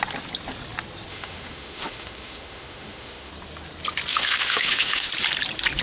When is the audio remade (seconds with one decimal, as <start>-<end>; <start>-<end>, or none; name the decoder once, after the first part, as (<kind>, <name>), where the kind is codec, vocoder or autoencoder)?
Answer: 1.1-3.3 (autoencoder, DAC-VAE); 4.1-5.1